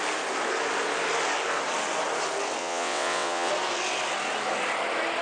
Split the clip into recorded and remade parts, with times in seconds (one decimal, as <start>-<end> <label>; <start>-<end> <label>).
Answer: 0.0-2.6 recorded; 2.6-3.5 remade; 3.5-5.2 recorded